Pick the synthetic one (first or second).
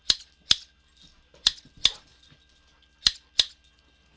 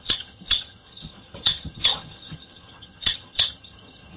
second